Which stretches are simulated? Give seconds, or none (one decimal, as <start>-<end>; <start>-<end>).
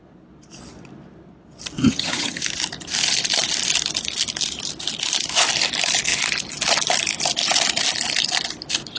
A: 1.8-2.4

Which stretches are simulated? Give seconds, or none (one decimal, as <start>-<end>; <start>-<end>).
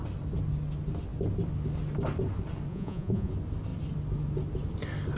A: 2.7-3.3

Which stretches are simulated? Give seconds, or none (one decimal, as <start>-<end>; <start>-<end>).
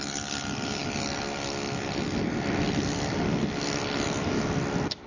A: none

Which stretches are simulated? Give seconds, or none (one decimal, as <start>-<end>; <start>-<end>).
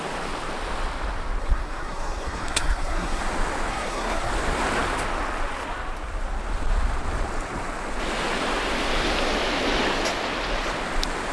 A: 1.4-3.2; 3.7-4.3